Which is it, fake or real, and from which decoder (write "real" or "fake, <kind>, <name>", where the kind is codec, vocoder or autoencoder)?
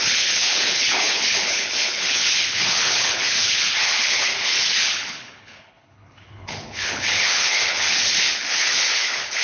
fake, codec, HILCodec